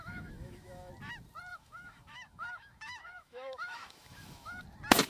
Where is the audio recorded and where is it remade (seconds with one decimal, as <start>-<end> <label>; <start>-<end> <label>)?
0.0-0.9 remade; 0.9-1.5 recorded; 1.5-4.6 remade; 4.6-5.1 recorded